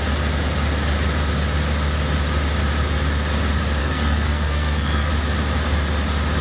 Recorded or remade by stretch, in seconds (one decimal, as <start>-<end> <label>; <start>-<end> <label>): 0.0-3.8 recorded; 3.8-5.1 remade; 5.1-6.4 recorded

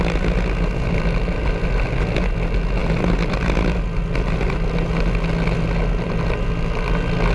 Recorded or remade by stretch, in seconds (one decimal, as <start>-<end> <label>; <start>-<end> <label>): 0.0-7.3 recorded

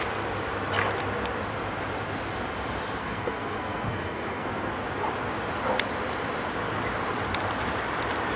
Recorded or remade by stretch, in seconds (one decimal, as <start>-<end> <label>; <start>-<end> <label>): 0.0-3.0 recorded; 3.0-4.7 remade; 4.7-8.4 recorded

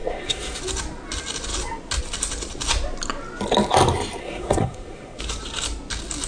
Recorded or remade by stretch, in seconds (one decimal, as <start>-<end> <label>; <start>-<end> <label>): 0.0-0.6 remade; 0.6-4.2 recorded; 4.2-5.2 remade; 5.2-6.3 recorded

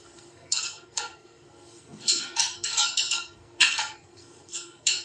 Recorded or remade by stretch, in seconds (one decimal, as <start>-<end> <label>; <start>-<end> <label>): 0.0-5.0 remade

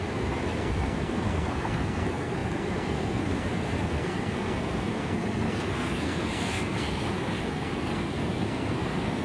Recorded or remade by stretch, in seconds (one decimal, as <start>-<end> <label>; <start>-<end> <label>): 0.0-9.2 remade

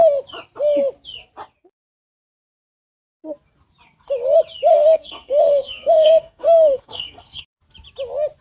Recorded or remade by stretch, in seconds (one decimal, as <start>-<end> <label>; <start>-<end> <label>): 0.0-4.7 recorded; 4.7-7.4 remade; 7.4-8.4 recorded